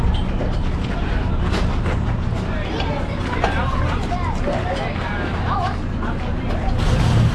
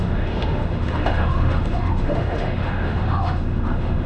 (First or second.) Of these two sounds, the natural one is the first